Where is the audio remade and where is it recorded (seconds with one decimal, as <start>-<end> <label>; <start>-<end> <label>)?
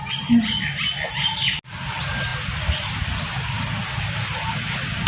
0.0-5.1 recorded